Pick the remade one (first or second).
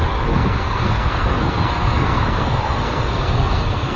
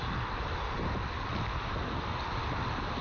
first